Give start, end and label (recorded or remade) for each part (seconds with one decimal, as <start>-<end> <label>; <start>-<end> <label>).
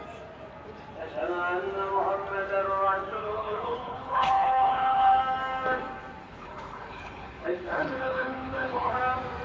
0.0-3.2 recorded; 3.2-5.2 remade; 5.2-6.2 recorded; 6.2-8.9 remade; 8.9-9.4 recorded